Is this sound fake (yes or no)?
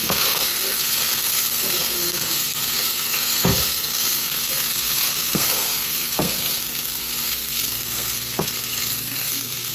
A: yes